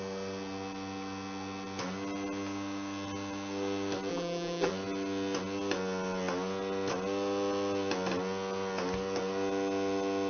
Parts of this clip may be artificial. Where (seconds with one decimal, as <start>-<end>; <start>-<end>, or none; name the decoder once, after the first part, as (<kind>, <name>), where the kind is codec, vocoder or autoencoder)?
4.1-4.7 (vocoder, BigVGAN v2)